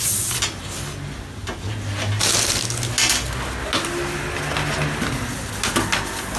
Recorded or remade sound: recorded